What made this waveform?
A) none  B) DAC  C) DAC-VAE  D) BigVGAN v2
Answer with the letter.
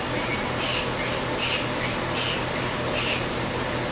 A